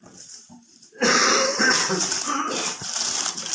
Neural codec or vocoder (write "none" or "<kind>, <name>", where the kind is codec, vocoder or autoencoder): vocoder, BigVGAN v2